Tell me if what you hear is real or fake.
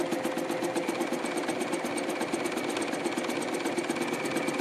real